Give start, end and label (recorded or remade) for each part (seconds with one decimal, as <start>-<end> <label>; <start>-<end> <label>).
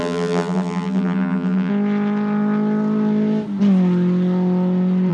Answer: 0.0-1.7 remade; 1.7-5.1 recorded